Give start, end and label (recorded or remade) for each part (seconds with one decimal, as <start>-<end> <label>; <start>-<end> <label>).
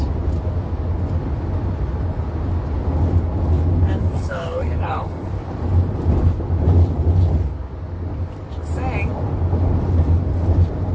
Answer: 0.0-4.0 recorded; 4.0-5.3 remade; 5.3-10.9 recorded